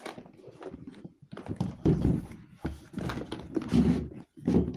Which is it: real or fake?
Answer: real